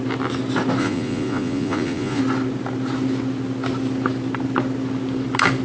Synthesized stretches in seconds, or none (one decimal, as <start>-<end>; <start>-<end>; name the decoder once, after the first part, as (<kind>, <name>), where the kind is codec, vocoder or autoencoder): 0.8-2.2 (vocoder, Vocos)